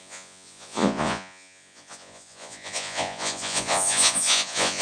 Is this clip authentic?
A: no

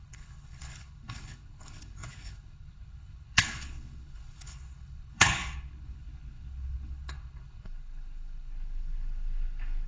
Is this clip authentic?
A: no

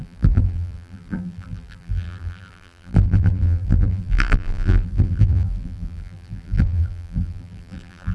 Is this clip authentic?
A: no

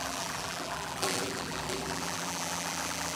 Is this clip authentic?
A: no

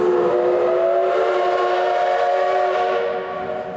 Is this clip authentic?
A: yes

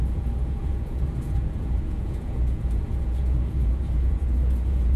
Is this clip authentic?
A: no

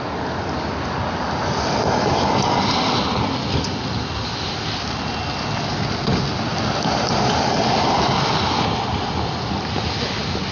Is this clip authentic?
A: yes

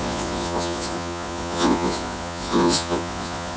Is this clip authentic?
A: no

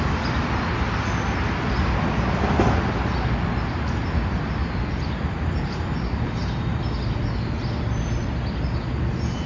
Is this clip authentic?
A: yes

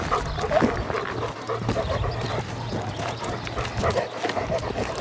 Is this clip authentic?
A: yes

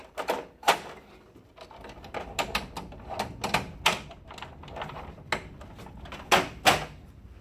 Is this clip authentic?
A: yes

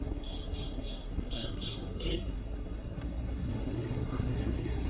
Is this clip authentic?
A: no